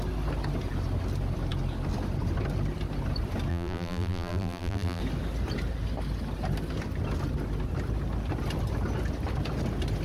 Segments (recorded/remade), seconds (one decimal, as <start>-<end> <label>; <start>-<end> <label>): 0.0-3.5 recorded; 3.5-5.0 remade; 5.0-10.0 recorded